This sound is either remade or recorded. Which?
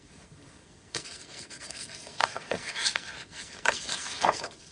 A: remade